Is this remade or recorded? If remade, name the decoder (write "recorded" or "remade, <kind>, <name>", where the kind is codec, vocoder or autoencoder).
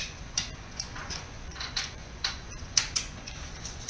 remade, vocoder, Vocos